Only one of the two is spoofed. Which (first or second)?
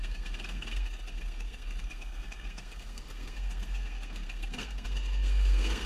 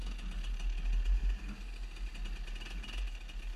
first